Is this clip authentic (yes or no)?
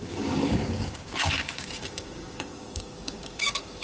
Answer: no